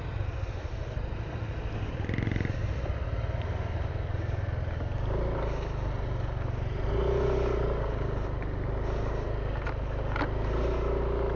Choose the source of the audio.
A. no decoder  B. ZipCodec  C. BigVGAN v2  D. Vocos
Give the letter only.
A